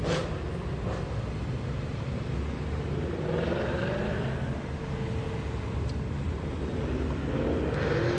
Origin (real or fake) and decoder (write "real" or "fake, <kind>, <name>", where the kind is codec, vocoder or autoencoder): real